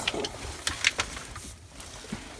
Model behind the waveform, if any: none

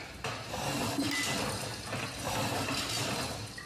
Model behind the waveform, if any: none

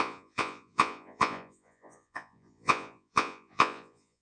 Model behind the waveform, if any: vocoder, Vocos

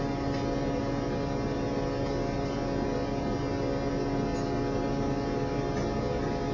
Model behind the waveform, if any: none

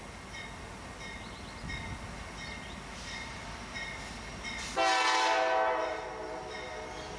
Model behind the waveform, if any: none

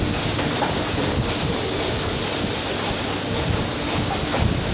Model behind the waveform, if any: none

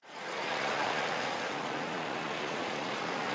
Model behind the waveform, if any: vocoder, Vocos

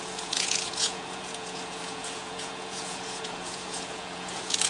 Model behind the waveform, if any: vocoder, Vocos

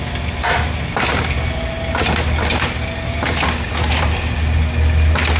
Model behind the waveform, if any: none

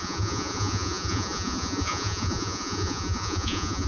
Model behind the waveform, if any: vocoder, Vocos